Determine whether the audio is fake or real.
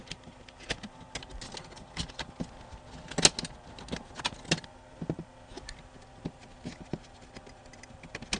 real